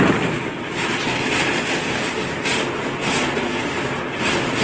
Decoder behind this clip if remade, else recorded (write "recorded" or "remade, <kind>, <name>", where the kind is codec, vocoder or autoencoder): recorded